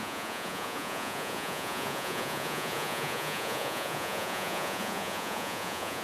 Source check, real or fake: fake